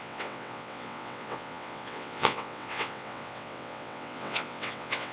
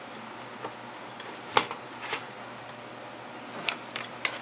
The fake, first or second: first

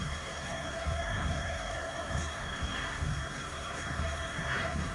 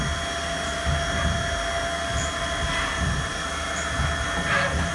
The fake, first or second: first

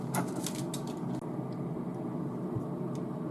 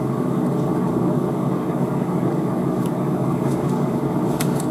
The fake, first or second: second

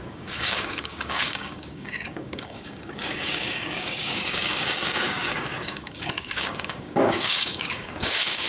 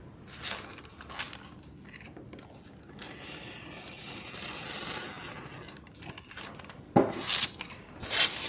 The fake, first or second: first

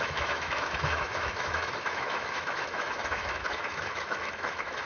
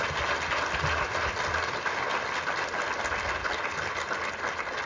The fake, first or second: first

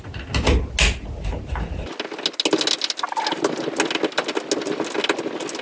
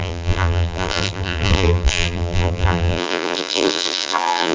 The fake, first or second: second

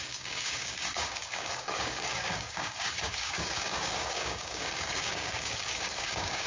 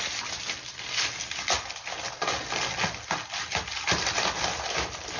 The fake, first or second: first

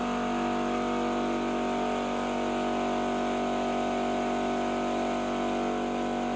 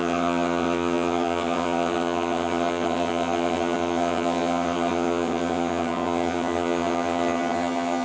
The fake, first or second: second